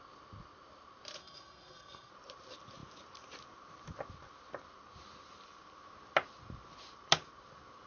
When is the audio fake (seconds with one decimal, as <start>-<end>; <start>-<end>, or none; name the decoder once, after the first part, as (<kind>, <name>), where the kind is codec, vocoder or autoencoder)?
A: 1.2-2.1 (codec, SNAC)